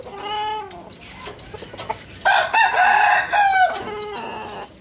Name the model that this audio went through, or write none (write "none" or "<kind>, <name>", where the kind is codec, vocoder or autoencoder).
none